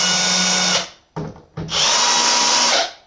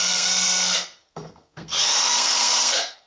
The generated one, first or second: second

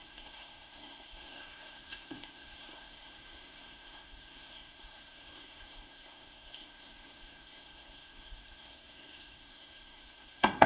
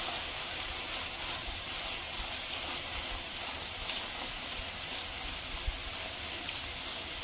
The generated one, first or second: first